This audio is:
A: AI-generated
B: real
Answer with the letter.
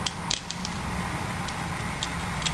B